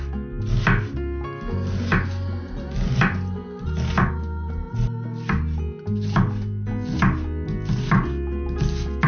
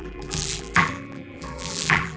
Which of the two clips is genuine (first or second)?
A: first